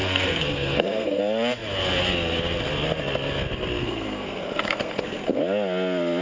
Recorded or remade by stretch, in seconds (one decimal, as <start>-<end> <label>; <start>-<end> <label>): 0.0-1.2 remade; 1.2-3.8 recorded; 3.8-5.4 remade; 5.4-6.2 recorded